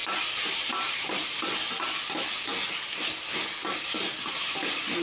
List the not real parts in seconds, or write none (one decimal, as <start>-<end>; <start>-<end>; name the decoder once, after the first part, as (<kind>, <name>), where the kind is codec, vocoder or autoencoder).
0.0-1.5 (vocoder, BigVGAN v2); 4.2-5.0